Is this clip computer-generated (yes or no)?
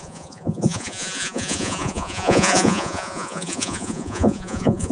yes